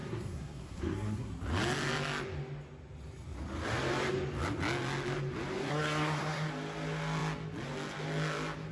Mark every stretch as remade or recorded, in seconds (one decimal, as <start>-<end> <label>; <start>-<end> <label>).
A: 0.0-1.3 remade; 1.3-5.6 recorded; 5.6-6.5 remade; 6.5-8.7 recorded